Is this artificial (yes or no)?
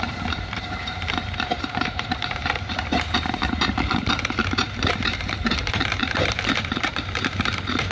yes